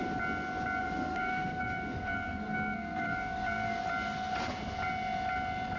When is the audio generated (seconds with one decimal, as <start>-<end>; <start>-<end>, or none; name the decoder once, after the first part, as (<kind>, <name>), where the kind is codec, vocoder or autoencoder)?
0.8-3.8 (codec, SNAC)